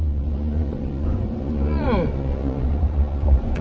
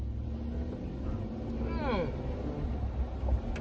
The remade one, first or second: first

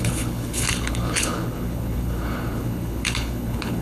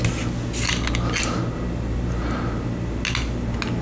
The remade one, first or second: first